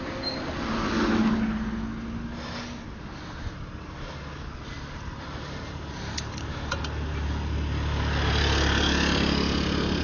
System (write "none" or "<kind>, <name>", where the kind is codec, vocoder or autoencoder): none